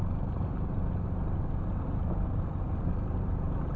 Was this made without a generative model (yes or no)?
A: yes